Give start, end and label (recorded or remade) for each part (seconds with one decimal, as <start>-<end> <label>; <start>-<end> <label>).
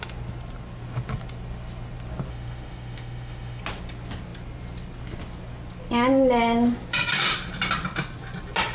0.0-2.3 recorded; 2.3-3.6 remade; 3.6-8.7 recorded